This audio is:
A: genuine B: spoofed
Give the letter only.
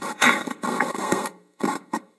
B